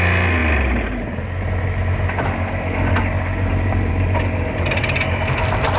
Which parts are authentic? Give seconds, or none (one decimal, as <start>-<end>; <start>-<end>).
0.0-5.8